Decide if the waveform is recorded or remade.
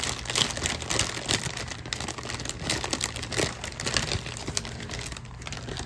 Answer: recorded